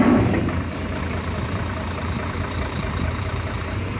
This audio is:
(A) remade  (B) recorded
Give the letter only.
A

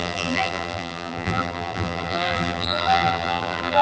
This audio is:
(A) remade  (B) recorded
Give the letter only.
A